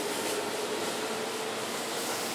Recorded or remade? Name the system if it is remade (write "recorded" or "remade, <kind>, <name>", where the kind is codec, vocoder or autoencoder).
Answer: recorded